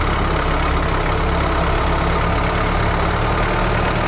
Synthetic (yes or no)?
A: no